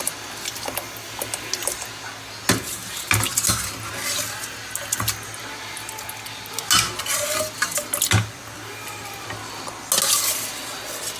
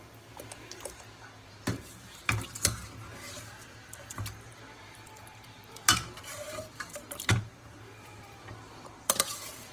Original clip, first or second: first